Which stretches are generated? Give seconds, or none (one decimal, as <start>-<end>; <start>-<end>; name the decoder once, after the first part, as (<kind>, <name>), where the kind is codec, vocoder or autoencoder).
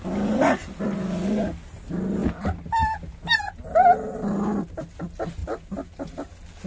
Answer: 0.6-1.3 (vocoder, BigVGAN v2)